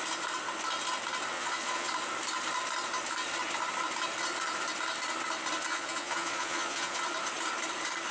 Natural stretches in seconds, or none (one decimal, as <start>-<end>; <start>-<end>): 0.0-1.3; 1.9-5.7; 7.0-8.1